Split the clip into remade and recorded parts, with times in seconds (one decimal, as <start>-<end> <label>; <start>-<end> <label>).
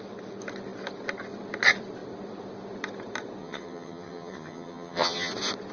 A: 0.0-3.4 recorded; 3.4-5.3 remade; 5.3-5.7 recorded